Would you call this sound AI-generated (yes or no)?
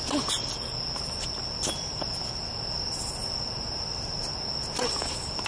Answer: no